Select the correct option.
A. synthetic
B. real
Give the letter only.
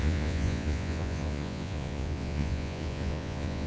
A